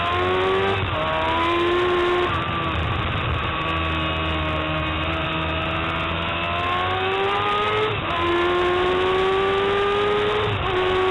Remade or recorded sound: recorded